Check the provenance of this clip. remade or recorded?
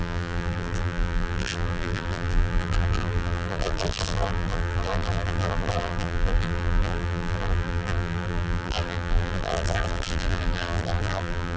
remade